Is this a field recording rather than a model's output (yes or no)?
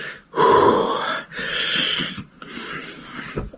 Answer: yes